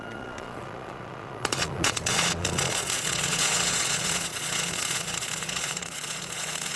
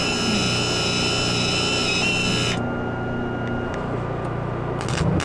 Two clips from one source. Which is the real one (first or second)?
second